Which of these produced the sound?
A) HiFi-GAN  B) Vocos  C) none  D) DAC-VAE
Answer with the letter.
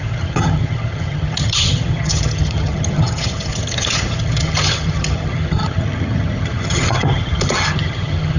A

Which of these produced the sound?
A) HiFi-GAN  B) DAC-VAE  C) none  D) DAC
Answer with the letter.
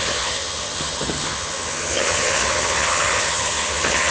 A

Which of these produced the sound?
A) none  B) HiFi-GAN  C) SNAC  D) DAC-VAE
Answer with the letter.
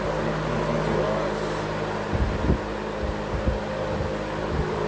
A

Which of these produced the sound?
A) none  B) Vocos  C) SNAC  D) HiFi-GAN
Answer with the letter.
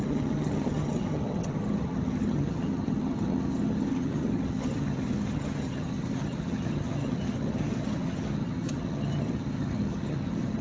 D